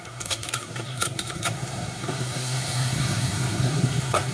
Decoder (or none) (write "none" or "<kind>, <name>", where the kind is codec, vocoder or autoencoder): codec, SNAC